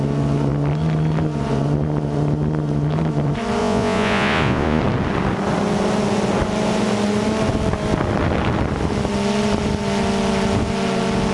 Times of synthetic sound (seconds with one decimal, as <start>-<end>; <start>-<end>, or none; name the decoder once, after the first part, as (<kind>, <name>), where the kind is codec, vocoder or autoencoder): 3.6-4.8 (vocoder, Vocos)